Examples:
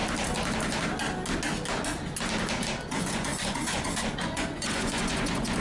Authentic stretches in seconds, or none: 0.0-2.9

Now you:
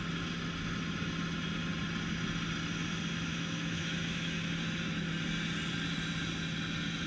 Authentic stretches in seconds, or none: 0.0-3.3; 4.5-7.1

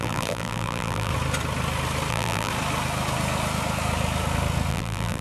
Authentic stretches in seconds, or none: 1.1-2.1; 2.5-4.7